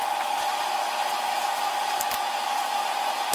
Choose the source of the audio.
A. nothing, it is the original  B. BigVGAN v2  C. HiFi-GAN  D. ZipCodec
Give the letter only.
A